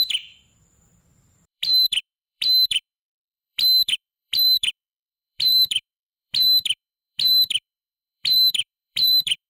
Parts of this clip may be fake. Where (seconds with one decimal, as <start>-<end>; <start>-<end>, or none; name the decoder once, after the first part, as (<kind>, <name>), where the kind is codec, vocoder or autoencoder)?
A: 0.0-9.5 (vocoder, BigVGAN v2)